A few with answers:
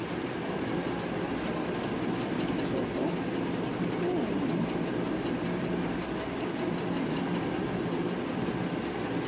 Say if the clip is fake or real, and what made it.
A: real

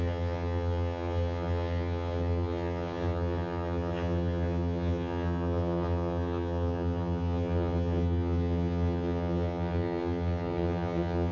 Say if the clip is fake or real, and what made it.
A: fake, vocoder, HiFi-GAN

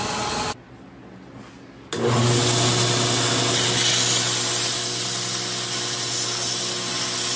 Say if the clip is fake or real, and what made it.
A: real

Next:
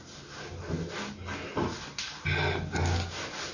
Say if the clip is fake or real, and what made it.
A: real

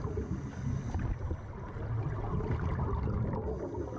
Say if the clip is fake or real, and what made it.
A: real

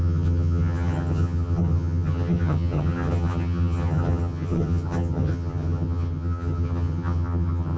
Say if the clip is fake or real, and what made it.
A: fake, vocoder, HiFi-GAN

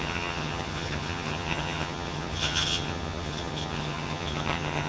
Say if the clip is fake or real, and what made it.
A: fake, vocoder, HiFi-GAN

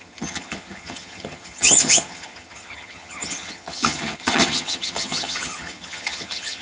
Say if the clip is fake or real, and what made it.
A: fake, vocoder, HiFi-GAN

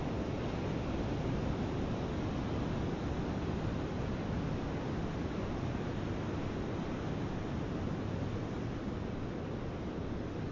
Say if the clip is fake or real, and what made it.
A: real